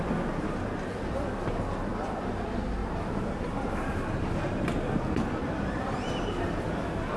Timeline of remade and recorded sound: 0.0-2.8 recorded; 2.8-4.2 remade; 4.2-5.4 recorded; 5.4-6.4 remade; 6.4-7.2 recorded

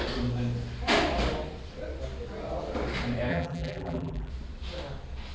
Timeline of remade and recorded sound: 0.0-3.3 recorded; 3.3-4.3 remade; 4.3-5.3 recorded

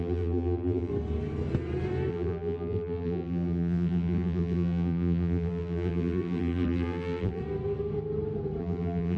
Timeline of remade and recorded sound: 0.0-0.9 remade; 0.9-2.1 recorded; 2.1-7.4 remade; 7.4-8.6 recorded; 8.6-9.2 remade

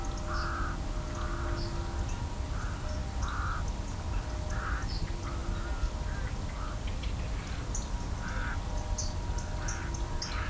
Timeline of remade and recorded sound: 0.0-10.5 recorded

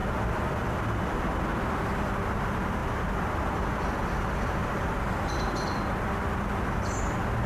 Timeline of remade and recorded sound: 0.0-1.4 remade; 1.4-2.8 recorded; 2.8-5.0 remade; 5.0-7.5 recorded